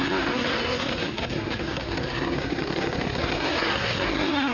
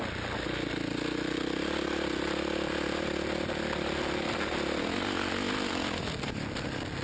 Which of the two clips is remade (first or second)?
first